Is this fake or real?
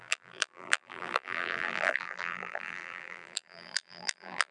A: fake